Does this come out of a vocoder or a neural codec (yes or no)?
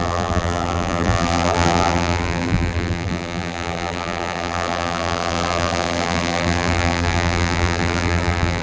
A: yes